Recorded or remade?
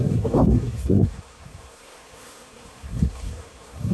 remade